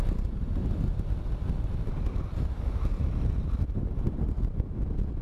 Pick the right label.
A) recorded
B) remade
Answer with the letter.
A